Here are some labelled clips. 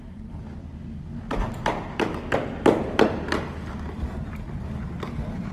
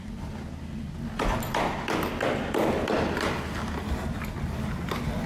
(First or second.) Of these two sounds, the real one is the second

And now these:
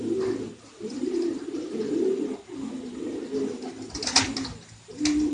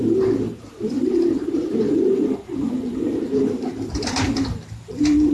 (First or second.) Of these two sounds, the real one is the first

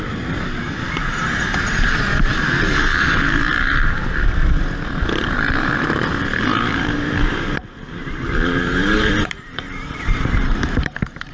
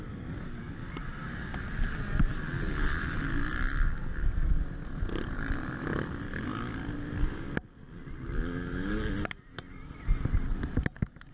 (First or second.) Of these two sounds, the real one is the second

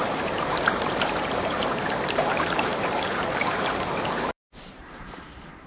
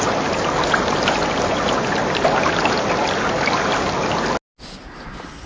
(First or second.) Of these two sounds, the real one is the second